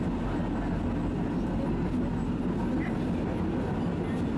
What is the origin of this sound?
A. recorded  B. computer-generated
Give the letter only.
A